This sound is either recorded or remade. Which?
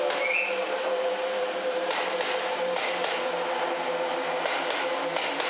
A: recorded